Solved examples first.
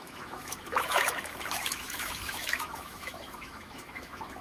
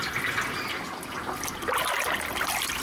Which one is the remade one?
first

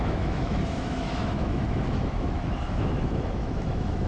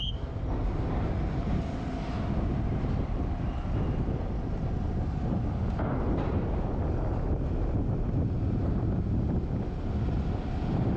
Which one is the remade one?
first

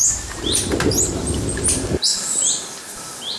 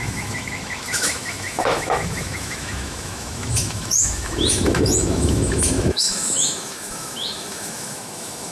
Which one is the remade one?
second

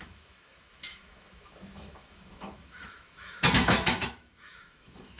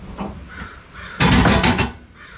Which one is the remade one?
first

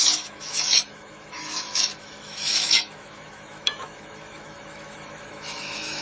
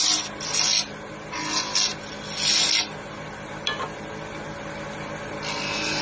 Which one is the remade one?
first